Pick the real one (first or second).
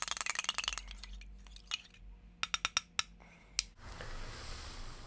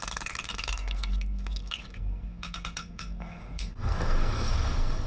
first